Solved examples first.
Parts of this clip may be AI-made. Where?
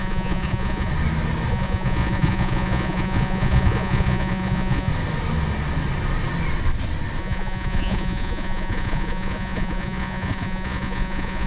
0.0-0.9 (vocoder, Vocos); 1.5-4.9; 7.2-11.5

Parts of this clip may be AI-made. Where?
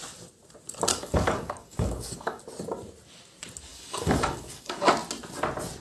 0.9-2.4 (codec, DAC); 3.7-4.9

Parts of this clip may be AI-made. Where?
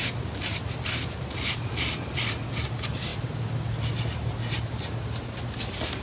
none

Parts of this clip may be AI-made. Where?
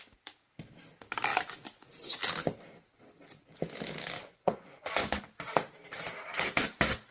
4.2-5.2 (vocoder, Vocos)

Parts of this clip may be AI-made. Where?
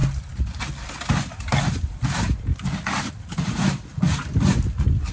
none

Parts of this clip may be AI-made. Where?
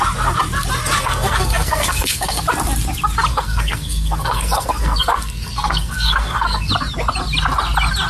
1.0-2.4 (codec, SNAC); 3.3-6.7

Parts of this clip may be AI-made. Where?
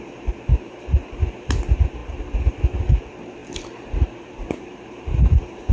3.4-5.3 (vocoder, BigVGAN v2)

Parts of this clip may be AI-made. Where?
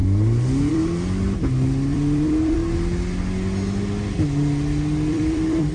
0.7-2.6 (vocoder, BigVGAN v2); 5.1-5.7